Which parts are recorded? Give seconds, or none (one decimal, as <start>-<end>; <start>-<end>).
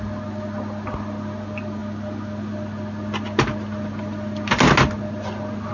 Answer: 0.0-5.7